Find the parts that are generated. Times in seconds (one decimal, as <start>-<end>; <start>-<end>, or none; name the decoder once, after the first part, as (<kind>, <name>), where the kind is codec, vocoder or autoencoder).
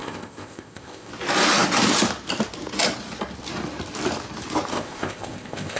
0.0-1.1 (codec, ZipCodec); 4.7-5.8